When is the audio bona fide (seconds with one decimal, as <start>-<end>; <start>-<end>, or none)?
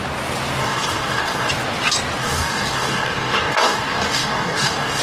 0.0-0.6; 1.5-2.2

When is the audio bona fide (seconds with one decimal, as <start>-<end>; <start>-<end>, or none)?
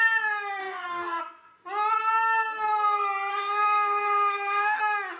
0.0-0.6; 1.2-3.3; 4.8-5.2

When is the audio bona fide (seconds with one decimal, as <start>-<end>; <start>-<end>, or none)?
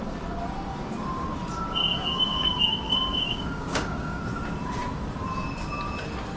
0.0-1.8; 4.2-6.4